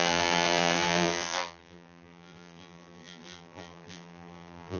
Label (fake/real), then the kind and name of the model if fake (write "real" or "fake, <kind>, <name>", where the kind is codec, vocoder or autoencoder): fake, vocoder, BigVGAN v2